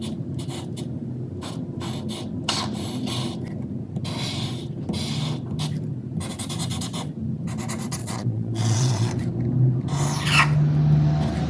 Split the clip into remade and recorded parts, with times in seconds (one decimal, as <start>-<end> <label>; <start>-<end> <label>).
0.0-8.0 recorded; 8.0-9.1 remade; 9.1-11.5 recorded